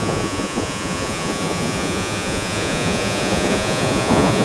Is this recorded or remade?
remade